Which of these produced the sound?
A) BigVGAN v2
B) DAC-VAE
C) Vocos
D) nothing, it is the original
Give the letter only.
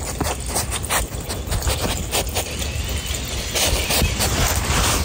D